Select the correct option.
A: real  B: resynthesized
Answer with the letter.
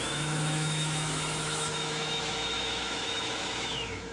B